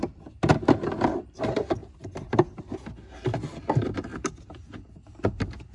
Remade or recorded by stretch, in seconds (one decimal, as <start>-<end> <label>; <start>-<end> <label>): 0.0-1.8 recorded; 1.8-2.6 remade; 2.6-5.7 recorded